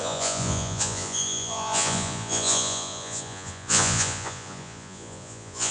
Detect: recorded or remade remade